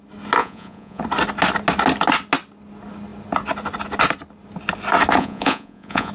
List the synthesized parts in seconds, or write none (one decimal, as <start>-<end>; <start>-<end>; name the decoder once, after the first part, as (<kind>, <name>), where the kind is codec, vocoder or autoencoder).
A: 0.4-1.0 (vocoder, Vocos); 5.2-6.1